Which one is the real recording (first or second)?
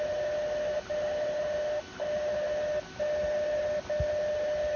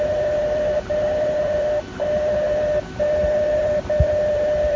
first